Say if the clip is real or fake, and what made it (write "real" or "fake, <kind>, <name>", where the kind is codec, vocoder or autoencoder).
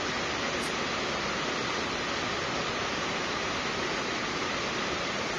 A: real